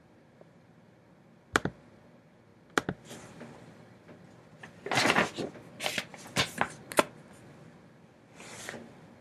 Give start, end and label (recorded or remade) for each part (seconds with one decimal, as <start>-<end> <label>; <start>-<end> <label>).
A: 0.0-9.2 recorded